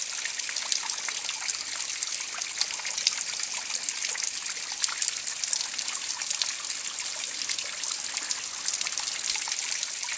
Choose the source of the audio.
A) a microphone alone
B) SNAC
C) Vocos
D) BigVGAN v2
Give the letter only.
A